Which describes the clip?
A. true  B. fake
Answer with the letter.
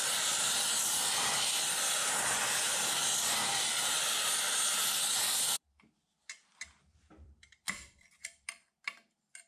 B